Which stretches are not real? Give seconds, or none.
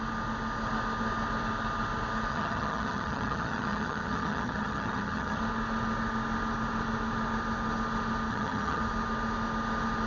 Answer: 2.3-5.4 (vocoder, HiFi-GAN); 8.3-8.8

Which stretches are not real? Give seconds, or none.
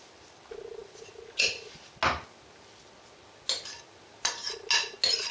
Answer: none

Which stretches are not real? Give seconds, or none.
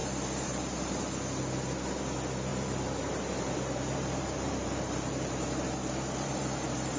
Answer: 0.0-1.0 (vocoder, BigVGAN v2); 2.5-7.0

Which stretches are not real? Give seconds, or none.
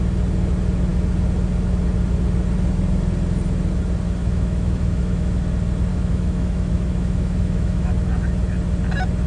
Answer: 4.2-5.3 (autoencoder, DAC-VAE); 5.9-7.9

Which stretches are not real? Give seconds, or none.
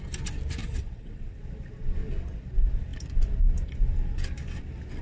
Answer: 0.6-1.4 (vocoder, WaveNeXt)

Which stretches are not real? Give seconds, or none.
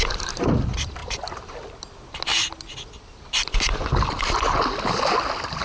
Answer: none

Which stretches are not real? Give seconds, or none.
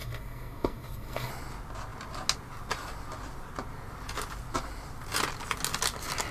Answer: 0.0-1.3 (codec, SNAC)